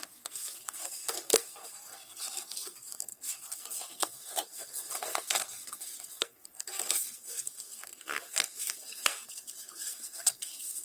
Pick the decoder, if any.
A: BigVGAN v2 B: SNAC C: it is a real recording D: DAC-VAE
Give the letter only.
B